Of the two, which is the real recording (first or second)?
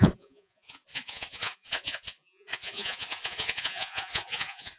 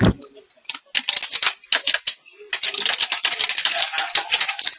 second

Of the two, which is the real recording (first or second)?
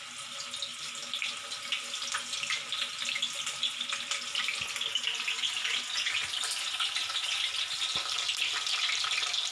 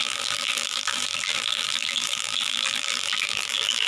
first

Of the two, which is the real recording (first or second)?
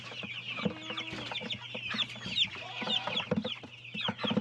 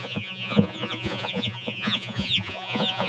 first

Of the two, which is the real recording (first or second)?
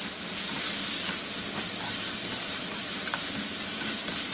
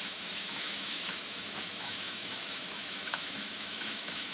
first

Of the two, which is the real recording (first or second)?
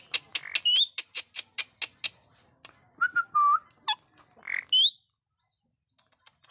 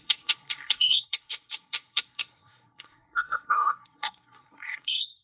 first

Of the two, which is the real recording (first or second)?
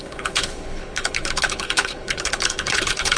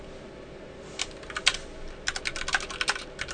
second